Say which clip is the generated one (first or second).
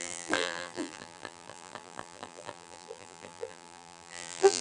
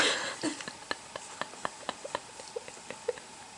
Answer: first